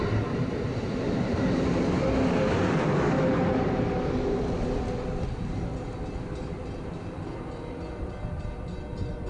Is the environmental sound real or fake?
real